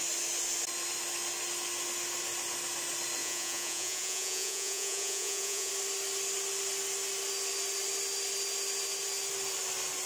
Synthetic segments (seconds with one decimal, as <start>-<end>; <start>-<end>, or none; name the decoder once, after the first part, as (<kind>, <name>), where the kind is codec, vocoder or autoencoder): 3.2-5.7 (vocoder, Vocos)